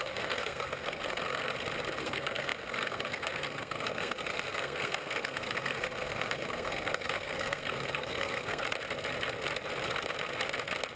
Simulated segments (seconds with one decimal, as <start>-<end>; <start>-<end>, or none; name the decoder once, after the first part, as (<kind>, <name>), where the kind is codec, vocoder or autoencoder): 0.0-1.4 (codec, SNAC); 2.0-8.6